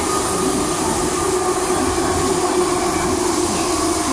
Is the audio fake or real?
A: real